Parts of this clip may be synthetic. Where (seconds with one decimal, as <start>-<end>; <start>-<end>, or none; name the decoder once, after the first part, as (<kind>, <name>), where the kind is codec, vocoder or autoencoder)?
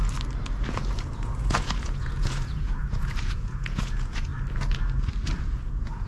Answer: 0.8-4.3 (vocoder, Vocos); 5.4-6.1